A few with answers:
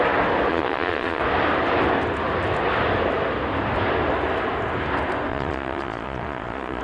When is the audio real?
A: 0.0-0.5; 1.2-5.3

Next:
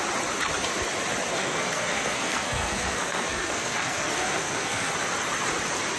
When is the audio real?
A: 0.0-1.3; 4.9-6.0